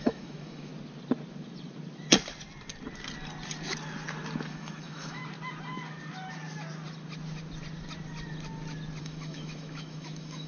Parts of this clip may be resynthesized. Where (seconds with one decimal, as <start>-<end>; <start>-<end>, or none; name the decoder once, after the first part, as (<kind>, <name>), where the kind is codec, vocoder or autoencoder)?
0.0-0.7 (autoencoder, DAC-VAE); 4.5-5.2; 9.0-10.5